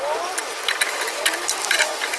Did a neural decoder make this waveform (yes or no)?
no